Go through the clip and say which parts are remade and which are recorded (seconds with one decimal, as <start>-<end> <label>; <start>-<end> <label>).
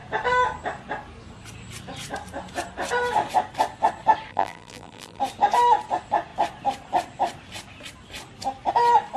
0.0-4.3 recorded; 4.3-5.2 remade; 5.2-9.2 recorded